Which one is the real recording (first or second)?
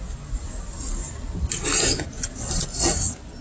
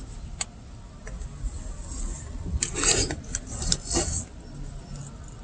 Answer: first